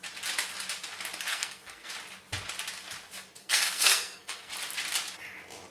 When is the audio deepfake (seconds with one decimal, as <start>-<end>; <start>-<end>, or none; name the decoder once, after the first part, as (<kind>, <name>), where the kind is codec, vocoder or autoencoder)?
1.3-1.9 (codec, SNAC); 3.4-4.5